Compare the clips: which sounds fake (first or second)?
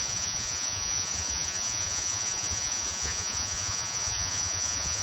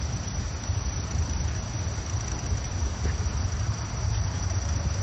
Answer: first